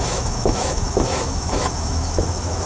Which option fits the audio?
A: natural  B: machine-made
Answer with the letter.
B